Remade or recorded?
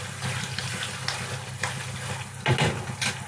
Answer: recorded